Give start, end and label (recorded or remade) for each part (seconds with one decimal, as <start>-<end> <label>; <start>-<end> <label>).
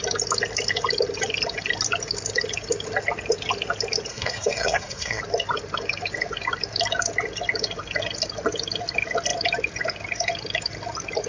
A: 0.0-4.1 recorded; 4.1-5.2 remade; 5.2-11.3 recorded